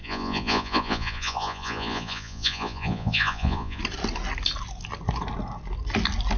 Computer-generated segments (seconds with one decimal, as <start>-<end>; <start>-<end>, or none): 0.0-3.8

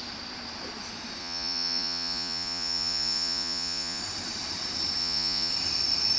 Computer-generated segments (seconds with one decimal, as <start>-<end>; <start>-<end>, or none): 1.2-4.0; 5.0-5.5

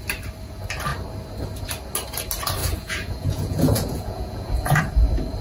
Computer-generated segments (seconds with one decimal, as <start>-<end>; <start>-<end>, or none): 2.6-4.8

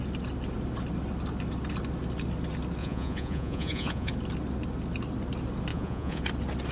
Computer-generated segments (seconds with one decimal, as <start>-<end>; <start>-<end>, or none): 2.8-4.1; 5.7-6.2

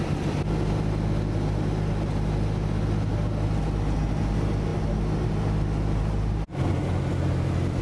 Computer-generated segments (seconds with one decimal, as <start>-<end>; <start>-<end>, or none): none